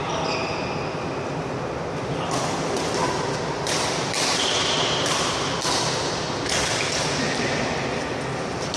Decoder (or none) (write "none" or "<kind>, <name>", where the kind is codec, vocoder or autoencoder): none